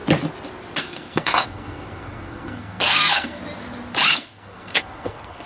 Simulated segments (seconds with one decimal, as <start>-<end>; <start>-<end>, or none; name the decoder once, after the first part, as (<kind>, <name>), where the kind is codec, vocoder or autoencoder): 0.8-3.4 (codec, SNAC); 4.1-5.5